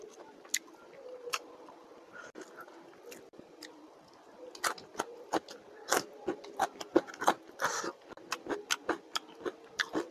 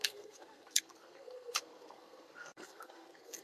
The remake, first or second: second